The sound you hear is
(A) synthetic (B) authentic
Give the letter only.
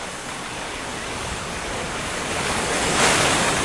A